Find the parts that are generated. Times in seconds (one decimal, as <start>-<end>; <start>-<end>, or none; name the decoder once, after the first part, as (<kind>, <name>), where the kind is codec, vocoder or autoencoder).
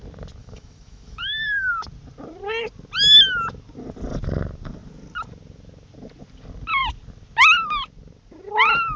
0.4-1.7 (autoencoder, DAC-VAE)